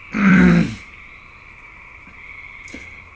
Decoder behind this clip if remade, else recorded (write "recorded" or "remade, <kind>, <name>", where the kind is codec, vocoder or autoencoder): remade, vocoder, BigVGAN v2